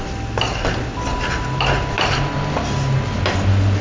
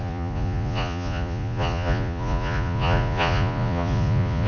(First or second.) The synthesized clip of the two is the second